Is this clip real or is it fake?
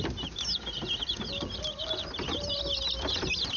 real